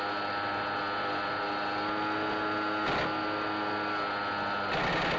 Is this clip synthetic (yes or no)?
no